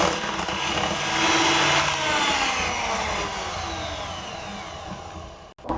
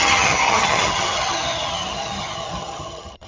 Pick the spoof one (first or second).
second